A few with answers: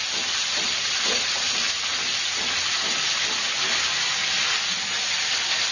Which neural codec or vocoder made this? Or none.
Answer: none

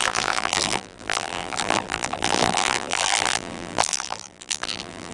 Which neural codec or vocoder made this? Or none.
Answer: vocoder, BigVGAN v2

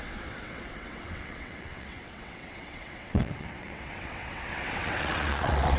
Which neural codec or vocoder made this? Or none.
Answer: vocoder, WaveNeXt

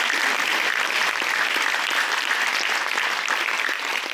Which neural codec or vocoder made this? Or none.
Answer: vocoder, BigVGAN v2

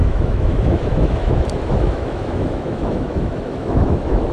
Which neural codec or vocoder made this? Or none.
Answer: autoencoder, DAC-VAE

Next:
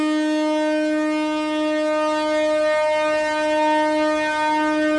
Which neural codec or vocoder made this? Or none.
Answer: none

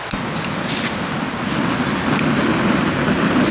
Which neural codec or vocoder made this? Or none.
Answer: none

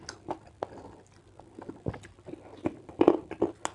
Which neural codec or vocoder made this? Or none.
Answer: none